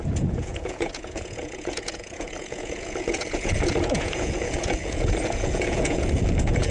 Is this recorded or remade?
remade